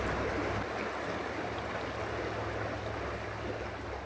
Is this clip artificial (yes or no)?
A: no